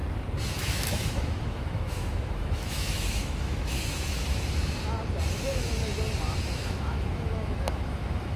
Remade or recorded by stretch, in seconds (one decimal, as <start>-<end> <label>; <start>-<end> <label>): 0.0-0.5 recorded; 0.5-4.8 remade; 4.8-5.3 recorded; 5.3-5.8 remade; 5.8-6.4 recorded; 6.4-8.4 remade